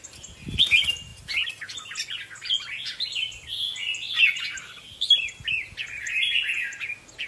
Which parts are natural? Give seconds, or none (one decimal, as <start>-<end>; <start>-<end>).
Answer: 0.0-7.3

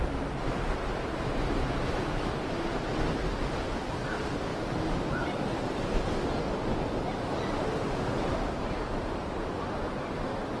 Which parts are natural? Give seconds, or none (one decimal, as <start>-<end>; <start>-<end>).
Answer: 0.0-10.6

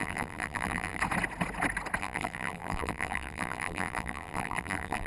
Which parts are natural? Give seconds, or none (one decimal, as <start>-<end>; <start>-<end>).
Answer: 1.0-2.0

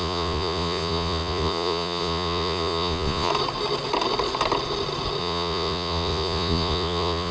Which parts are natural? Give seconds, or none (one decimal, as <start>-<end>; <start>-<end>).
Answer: 3.3-5.2

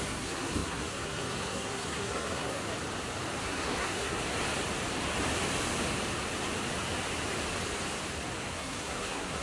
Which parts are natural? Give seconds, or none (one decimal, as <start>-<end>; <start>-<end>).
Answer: 2.6-3.4; 4.2-8.5

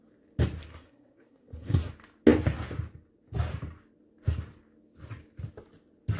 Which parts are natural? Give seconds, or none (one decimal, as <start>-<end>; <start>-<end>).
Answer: 0.0-0.7; 1.9-6.2

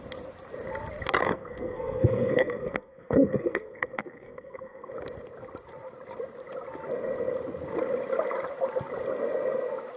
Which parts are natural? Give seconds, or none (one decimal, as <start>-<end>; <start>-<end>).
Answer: 0.0-1.2; 4.9-10.0

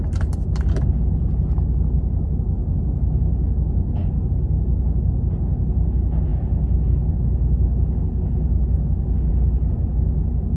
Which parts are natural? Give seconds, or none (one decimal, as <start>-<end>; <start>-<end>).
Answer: 0.0-10.6